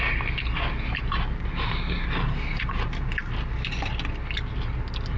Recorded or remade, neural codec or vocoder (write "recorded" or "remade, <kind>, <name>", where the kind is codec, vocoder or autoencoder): recorded